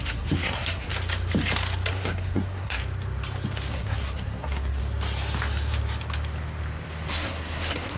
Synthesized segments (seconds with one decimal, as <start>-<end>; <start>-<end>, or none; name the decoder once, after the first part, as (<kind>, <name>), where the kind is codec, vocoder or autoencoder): 0.0-0.9 (codec, SNAC); 1.9-2.8; 3.7-4.8; 7.1-8.0